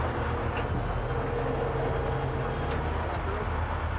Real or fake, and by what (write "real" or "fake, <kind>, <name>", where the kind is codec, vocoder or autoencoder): real